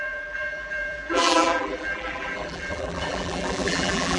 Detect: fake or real fake